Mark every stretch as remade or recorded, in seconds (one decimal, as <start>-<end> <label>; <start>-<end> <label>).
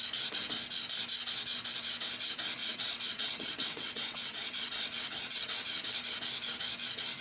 0.0-2.6 recorded; 2.6-5.6 remade; 5.6-7.2 recorded